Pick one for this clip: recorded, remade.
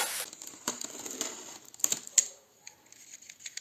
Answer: recorded